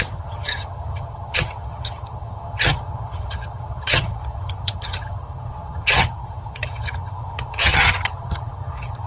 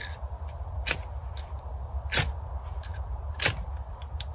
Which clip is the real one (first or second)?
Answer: second